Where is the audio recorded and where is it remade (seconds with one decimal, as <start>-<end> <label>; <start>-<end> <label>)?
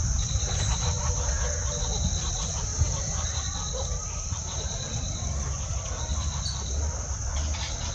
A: 0.0-2.7 recorded; 2.7-3.4 remade; 3.4-7.9 recorded